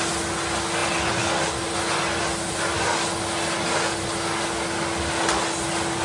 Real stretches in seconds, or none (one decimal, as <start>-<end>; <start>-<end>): 0.0-6.0